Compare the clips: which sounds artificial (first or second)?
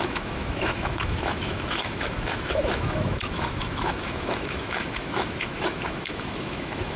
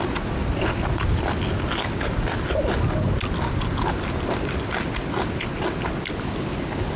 first